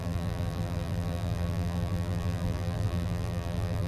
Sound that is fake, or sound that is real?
fake